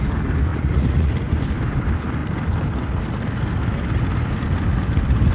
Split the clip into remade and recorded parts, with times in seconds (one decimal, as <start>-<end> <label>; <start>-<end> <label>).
0.0-0.5 recorded; 0.5-1.1 remade; 1.1-5.3 recorded